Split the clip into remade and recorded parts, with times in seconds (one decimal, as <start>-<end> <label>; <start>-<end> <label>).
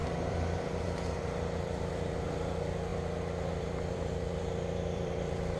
0.0-2.9 remade; 2.9-3.5 recorded; 3.5-5.6 remade